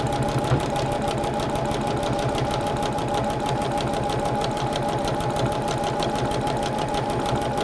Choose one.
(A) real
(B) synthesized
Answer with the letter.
A